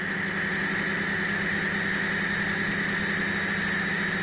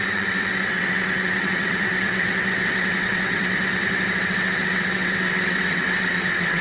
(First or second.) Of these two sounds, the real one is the first